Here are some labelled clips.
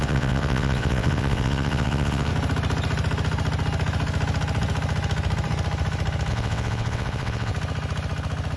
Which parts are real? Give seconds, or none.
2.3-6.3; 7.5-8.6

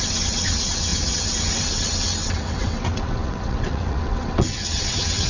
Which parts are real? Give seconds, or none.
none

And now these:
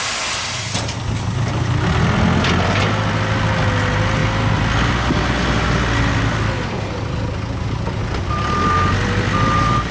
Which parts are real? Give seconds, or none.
0.0-9.9

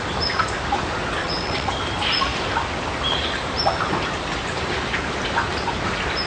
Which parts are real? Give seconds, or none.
0.0-1.2; 1.7-6.3

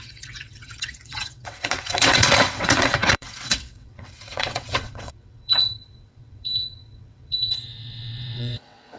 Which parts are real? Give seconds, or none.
none

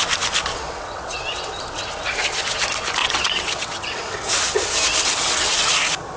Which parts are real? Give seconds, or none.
0.0-0.5; 1.5-3.0; 4.4-4.9; 5.7-6.2

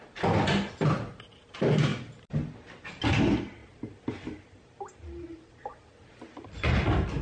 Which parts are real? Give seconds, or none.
0.0-7.2